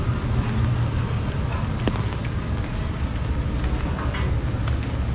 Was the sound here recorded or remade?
recorded